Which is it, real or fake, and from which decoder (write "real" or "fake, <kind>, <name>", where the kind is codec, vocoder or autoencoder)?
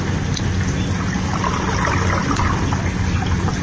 real